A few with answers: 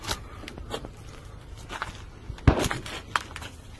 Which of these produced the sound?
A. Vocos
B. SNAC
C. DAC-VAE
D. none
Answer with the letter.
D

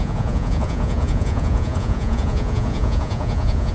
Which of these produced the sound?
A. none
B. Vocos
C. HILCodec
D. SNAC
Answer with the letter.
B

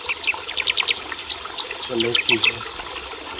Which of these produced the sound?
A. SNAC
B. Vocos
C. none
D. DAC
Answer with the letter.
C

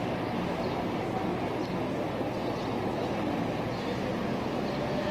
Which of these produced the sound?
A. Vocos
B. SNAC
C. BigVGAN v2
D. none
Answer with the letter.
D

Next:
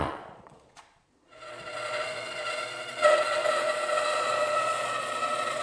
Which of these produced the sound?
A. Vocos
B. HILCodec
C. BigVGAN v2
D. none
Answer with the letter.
A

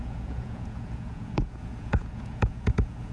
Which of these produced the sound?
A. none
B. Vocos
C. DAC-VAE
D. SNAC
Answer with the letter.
B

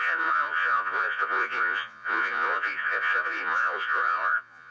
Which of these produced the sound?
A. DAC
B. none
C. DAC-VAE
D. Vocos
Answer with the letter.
D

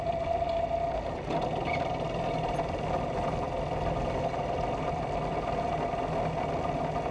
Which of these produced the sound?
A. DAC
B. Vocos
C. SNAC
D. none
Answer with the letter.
D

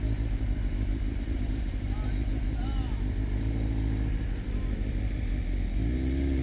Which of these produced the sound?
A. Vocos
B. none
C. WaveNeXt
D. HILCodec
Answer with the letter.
B